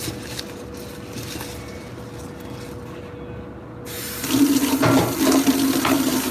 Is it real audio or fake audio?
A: real